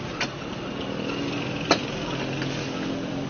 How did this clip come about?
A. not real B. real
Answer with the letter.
B